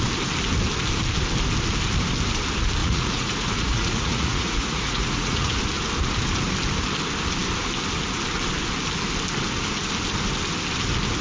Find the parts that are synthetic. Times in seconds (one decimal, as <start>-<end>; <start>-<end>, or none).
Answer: 2.8-5.6